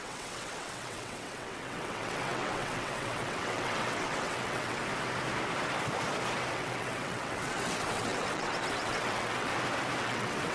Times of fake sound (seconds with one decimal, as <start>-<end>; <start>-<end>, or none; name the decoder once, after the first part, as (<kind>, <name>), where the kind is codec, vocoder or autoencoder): 0.0-4.8 (vocoder, WaveNeXt); 6.5-9.5; 10.0-10.5